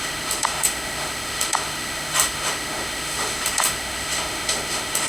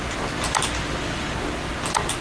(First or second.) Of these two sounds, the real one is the second